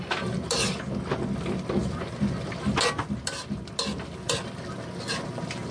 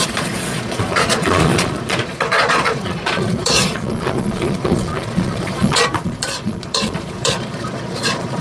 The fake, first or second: second